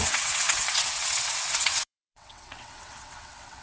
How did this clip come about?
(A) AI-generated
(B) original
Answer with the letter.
A